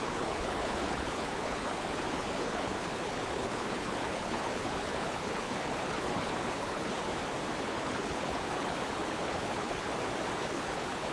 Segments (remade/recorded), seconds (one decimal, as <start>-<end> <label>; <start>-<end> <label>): 0.0-7.1 remade; 7.1-7.6 recorded; 7.6-9.9 remade; 9.9-10.4 recorded; 10.4-11.1 remade